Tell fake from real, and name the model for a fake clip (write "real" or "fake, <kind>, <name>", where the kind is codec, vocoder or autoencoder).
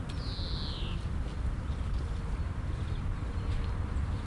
real